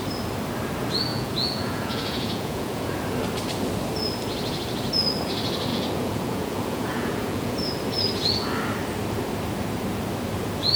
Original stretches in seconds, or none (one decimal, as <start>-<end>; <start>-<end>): 0.0-1.1; 2.9-5.7; 7.7-10.8